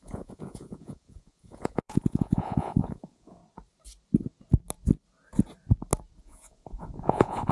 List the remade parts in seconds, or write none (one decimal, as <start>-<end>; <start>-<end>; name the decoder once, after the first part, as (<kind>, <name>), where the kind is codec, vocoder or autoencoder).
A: 0.0-3.4 (vocoder, Vocos); 6.2-7.5